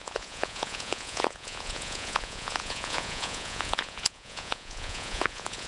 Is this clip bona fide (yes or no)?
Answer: no